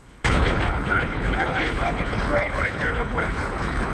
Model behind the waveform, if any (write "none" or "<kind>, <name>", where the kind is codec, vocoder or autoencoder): codec, HILCodec